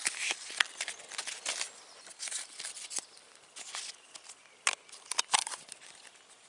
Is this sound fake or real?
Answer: real